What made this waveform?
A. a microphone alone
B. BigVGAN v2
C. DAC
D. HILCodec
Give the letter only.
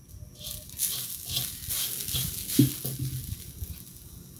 A